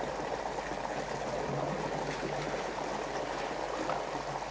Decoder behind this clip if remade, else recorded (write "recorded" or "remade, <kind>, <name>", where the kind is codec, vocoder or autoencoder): recorded